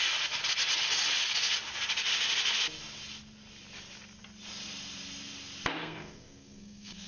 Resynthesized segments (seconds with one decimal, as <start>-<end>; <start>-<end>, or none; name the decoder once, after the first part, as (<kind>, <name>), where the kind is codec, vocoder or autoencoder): 5.8-7.1 (codec, SNAC)